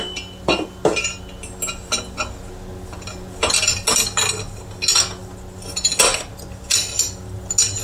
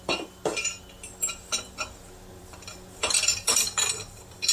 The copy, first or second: second